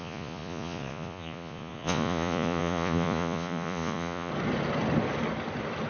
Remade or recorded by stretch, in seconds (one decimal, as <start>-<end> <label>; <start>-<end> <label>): 0.0-4.3 remade; 4.3-5.9 recorded